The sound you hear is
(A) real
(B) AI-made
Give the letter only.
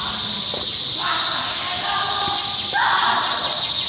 A